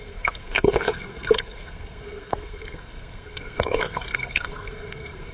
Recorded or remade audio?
remade